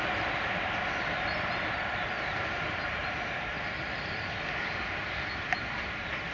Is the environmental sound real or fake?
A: real